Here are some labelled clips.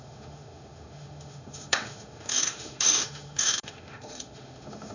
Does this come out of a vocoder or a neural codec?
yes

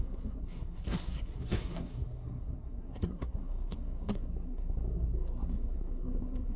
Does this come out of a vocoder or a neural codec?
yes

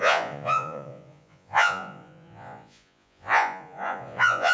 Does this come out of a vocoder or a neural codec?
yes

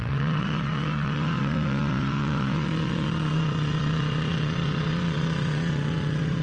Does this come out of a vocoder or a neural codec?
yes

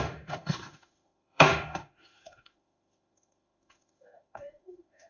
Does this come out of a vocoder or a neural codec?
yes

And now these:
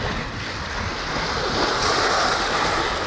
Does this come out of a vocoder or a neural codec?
no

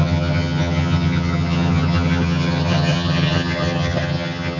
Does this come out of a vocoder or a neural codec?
yes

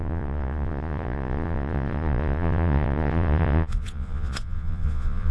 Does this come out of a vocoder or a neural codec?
yes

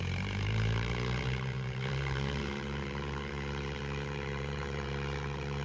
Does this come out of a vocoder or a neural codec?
yes